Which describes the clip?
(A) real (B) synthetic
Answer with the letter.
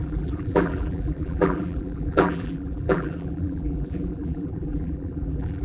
B